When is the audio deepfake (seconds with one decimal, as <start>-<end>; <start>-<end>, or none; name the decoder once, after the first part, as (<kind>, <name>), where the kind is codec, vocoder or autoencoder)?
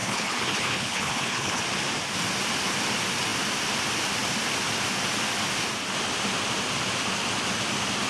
0.0-1.6 (codec, HILCodec)